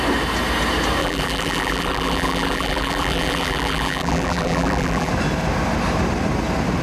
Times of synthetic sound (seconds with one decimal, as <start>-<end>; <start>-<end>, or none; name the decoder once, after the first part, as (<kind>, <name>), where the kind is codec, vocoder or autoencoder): 1.0-5.1 (vocoder, BigVGAN v2)